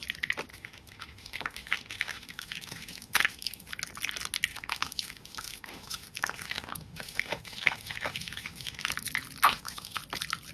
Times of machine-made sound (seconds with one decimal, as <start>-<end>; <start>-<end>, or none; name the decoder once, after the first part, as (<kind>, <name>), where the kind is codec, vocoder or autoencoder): 0.5-3.7 (autoencoder, DAC-VAE); 4.5-8.9; 9.5-10.0